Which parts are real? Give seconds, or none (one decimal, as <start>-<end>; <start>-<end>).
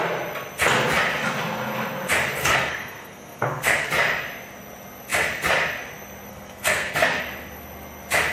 0.0-2.4; 3.9-6.3; 7.2-8.3